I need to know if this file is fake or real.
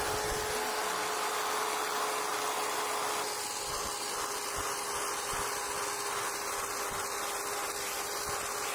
real